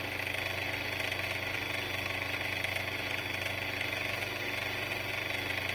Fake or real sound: real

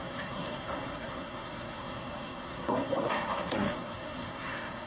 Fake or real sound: fake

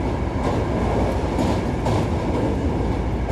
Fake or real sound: real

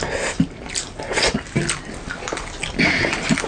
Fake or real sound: real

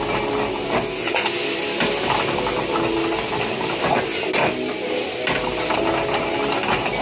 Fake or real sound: real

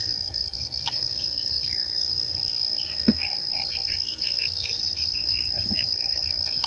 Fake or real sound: fake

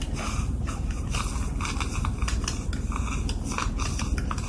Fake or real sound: real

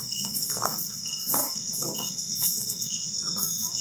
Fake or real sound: fake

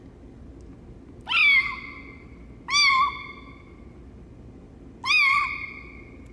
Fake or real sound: real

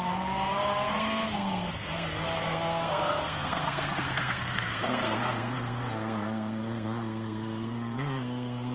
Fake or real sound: fake